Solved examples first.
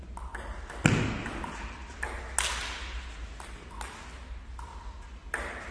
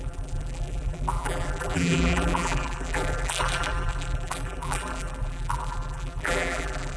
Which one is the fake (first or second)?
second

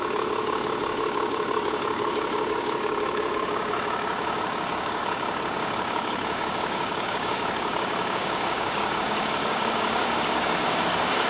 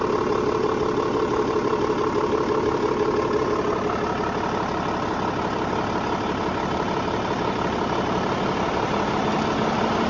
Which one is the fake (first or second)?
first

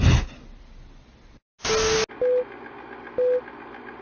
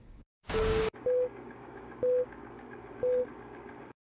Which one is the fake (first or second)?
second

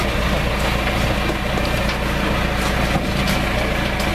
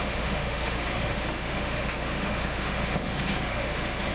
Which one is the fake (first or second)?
second